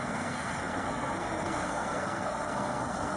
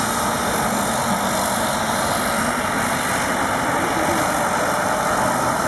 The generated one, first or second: first